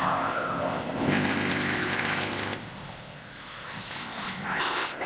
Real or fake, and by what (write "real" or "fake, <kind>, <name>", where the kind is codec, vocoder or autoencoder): fake, codec, ZipCodec